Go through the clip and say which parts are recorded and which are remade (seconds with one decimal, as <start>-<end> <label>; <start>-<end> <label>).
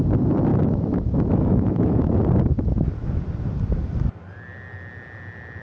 0.0-0.5 recorded; 0.5-2.1 remade; 2.1-5.6 recorded